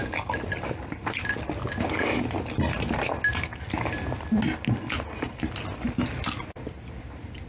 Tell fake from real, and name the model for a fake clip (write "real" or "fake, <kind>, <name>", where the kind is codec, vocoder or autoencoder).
real